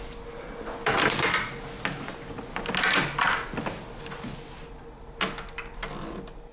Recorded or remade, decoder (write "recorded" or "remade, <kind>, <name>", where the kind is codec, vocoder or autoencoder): recorded